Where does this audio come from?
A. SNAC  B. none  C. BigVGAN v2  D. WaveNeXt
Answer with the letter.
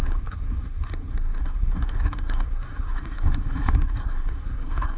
A